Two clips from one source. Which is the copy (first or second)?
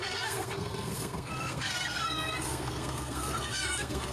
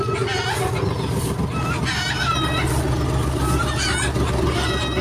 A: first